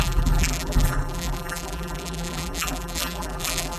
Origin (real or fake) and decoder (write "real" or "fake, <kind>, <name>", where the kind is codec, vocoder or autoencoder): fake, vocoder, BigVGAN v2